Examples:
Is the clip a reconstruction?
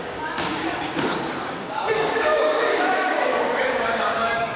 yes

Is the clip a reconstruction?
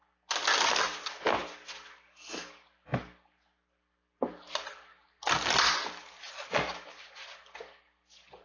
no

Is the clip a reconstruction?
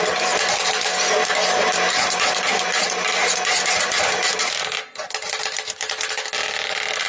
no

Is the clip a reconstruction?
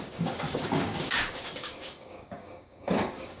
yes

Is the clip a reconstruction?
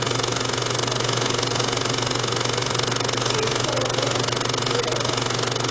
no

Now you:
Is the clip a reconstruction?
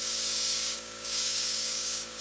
yes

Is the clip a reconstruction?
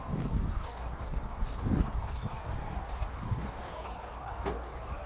yes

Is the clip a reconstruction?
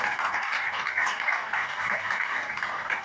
yes